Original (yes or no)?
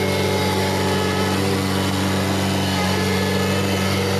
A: yes